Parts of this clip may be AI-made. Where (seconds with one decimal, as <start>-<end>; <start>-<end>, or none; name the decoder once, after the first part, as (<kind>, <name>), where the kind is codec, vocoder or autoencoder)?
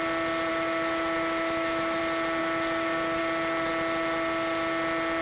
0.5-2.0 (autoencoder, DAC-VAE); 2.4-3.2